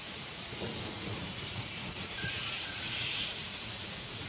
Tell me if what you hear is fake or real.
fake